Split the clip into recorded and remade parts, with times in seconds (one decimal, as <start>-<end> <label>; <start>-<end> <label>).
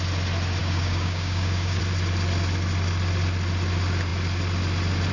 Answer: 0.0-0.6 recorded; 0.6-1.8 remade; 1.8-5.1 recorded